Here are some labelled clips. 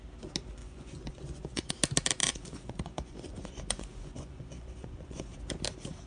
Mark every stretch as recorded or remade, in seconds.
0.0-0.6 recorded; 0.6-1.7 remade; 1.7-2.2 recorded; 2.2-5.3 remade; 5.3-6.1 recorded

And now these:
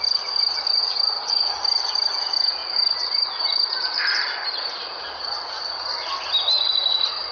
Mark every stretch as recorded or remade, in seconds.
0.0-2.6 recorded; 2.6-3.7 remade; 3.7-7.3 recorded

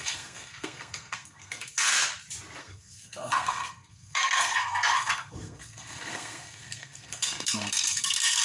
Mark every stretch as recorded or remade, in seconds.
0.0-1.9 remade; 1.9-2.6 recorded; 2.6-8.4 remade

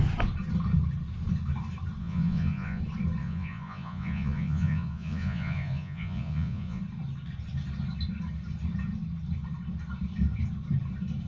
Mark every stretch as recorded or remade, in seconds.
0.0-2.0 recorded; 2.0-2.8 remade; 2.8-3.2 recorded; 3.2-6.8 remade; 6.8-11.3 recorded

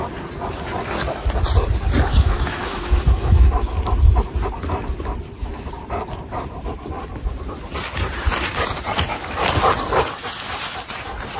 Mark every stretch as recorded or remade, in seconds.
0.0-2.1 recorded; 2.1-3.5 remade; 3.5-11.4 recorded

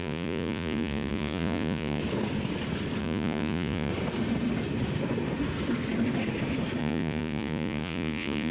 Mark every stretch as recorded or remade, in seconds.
0.0-2.0 remade; 2.0-3.0 recorded; 3.0-3.9 remade; 3.9-6.8 recorded; 6.8-8.5 remade

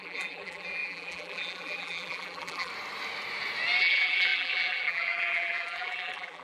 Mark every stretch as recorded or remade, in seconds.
0.0-2.7 remade; 2.7-3.8 recorded; 3.8-6.4 remade